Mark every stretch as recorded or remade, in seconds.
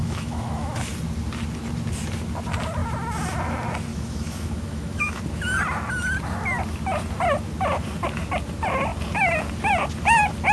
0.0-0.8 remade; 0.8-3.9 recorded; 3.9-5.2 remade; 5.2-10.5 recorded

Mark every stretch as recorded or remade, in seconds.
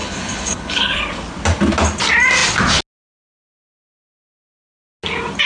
0.0-1.0 remade; 1.0-5.5 recorded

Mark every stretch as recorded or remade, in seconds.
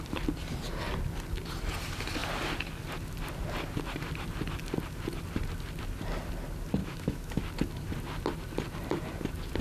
0.0-6.8 recorded; 6.8-7.4 remade; 7.4-9.6 recorded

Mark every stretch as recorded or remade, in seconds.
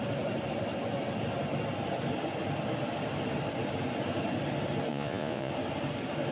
0.0-4.9 recorded; 4.9-5.5 remade; 5.5-6.3 recorded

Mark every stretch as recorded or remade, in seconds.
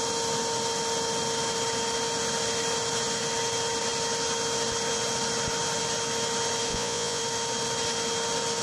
0.0-6.7 recorded; 6.7-7.2 remade; 7.2-8.6 recorded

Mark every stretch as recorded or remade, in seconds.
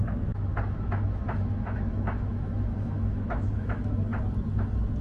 0.0-4.1 remade; 4.1-5.0 recorded